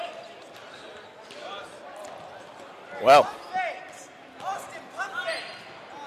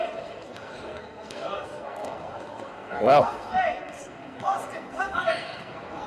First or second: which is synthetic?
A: second